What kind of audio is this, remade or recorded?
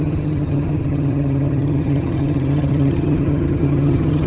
remade